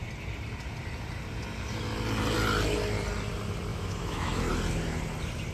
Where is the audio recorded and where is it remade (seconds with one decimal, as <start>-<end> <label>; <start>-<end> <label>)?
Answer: 0.0-3.7 recorded; 3.7-4.5 remade; 4.5-5.5 recorded